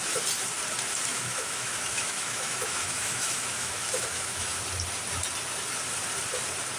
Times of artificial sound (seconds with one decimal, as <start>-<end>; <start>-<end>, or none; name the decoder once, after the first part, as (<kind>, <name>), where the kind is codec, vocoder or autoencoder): 1.1-4.6 (autoencoder, DAC-VAE)